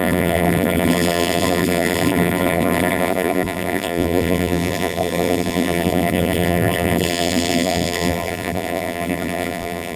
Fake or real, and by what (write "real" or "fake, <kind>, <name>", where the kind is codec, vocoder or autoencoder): fake, vocoder, BigVGAN v2